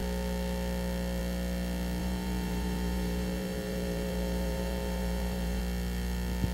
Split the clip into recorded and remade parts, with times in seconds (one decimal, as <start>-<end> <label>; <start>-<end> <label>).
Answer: 0.0-2.0 recorded; 2.0-5.6 remade; 5.6-6.5 recorded